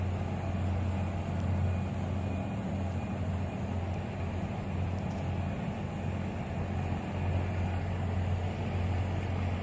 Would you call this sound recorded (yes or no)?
yes